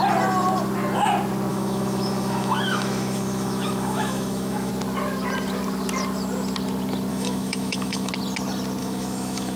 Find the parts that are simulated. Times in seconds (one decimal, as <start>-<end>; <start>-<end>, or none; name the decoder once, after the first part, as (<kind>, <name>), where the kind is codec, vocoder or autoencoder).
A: 1.5-4.7 (autoencoder, DAC-VAE); 7.1-8.1; 8.8-9.6